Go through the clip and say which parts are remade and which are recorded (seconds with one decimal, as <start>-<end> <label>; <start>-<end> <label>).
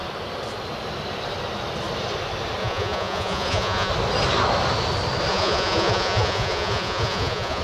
0.0-2.6 recorded; 2.6-3.9 remade; 3.9-5.3 recorded; 5.3-7.6 remade